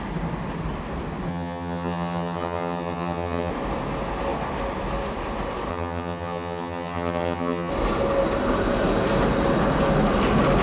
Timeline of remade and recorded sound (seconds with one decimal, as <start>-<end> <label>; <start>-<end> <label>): 0.0-1.3 recorded; 1.3-3.5 remade; 3.5-5.7 recorded; 5.7-7.7 remade; 7.7-10.6 recorded